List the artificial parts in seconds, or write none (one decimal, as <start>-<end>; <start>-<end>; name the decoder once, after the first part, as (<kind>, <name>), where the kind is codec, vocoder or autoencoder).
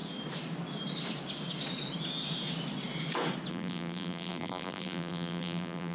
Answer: 3.5-5.9 (vocoder, BigVGAN v2)